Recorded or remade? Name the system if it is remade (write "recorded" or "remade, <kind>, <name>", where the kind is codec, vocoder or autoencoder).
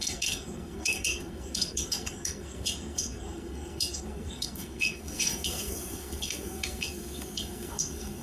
remade, codec, SNAC